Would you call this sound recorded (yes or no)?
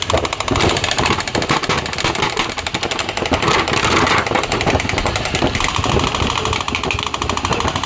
yes